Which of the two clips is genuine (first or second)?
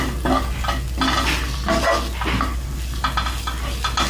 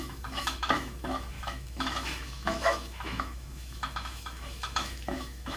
first